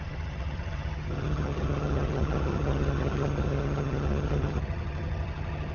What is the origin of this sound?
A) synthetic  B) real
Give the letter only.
A